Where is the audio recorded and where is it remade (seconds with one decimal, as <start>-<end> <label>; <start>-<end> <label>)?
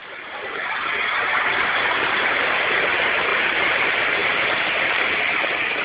0.0-2.8 remade; 2.8-3.3 recorded; 3.3-3.8 remade; 3.8-5.8 recorded